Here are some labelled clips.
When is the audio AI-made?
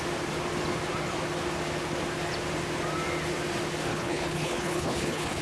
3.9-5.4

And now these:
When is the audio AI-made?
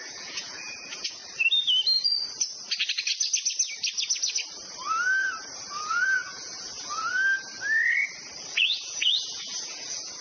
0.0-1.2; 5.7-7.1; 8.5-10.2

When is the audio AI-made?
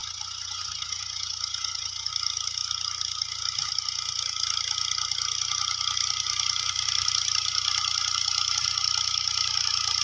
0.0-2.1